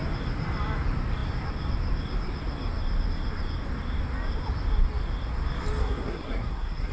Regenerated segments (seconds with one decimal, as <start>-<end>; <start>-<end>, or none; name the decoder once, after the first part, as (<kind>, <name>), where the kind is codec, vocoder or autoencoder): 5.8-6.9 (codec, SNAC)